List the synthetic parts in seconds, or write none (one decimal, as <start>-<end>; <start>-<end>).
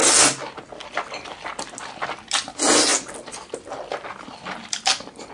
none